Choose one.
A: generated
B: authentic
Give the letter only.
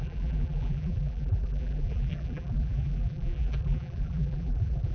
A